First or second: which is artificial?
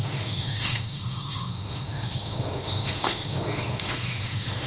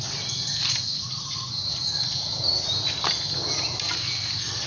first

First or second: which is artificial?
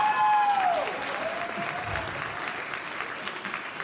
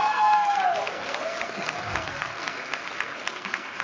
second